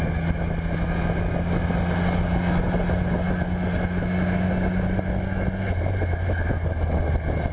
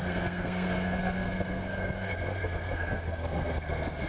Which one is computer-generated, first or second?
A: second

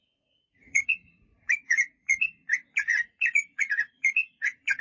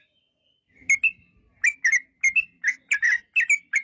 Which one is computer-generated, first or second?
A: first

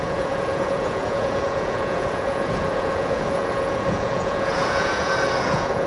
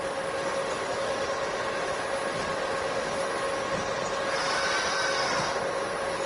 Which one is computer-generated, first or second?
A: first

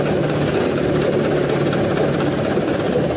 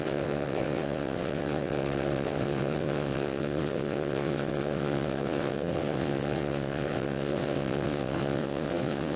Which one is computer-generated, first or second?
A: second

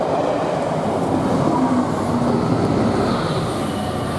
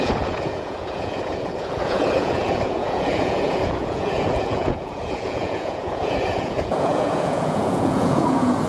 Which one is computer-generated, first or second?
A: second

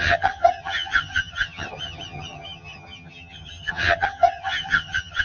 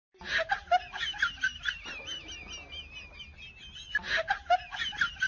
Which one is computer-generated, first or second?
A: first